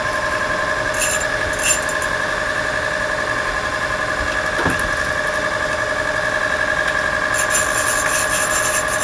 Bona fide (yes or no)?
yes